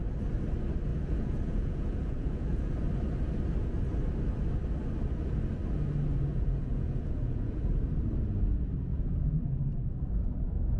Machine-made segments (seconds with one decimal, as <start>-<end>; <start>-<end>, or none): 0.9-2.8; 6.3-7.6; 8.9-9.6